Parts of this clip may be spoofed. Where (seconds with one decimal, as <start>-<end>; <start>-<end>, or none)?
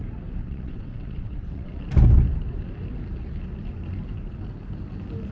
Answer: 0.4-1.8